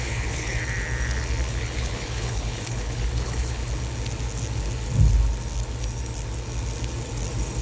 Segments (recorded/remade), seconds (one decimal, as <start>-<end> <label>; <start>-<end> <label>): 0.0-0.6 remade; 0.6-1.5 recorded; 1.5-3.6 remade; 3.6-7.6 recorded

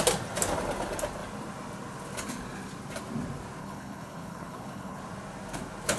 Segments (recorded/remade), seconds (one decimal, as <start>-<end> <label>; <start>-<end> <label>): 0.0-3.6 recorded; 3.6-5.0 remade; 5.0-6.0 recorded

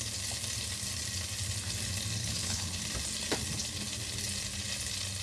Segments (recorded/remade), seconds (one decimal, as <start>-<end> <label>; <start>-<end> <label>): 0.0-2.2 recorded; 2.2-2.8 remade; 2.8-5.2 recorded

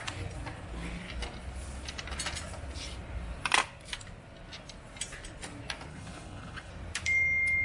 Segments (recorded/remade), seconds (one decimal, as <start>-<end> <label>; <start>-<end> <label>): 0.0-5.9 recorded; 5.9-6.7 remade; 6.7-7.6 recorded

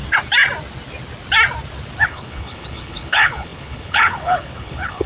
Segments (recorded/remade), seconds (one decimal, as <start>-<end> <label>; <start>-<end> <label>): 0.0-2.0 recorded; 2.0-5.1 remade

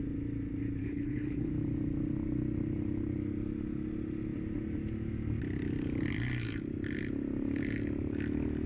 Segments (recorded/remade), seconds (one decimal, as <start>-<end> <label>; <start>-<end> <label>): 0.0-0.8 recorded; 0.8-1.5 remade; 1.5-8.7 recorded